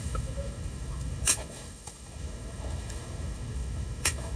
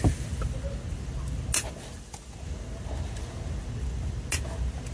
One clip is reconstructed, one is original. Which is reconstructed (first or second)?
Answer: first